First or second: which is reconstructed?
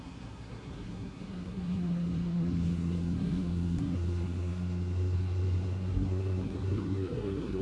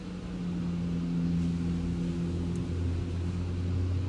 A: first